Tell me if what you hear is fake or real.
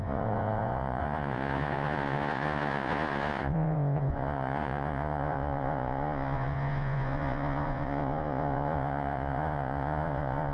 fake